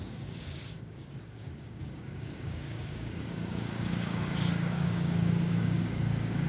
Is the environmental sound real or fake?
fake